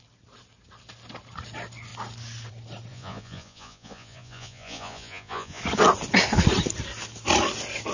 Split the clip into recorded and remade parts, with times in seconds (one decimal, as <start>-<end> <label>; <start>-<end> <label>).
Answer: 0.0-2.9 recorded; 2.9-5.6 remade; 5.6-7.9 recorded